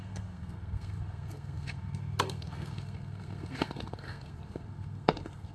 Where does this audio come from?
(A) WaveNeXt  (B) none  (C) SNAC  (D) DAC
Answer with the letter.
C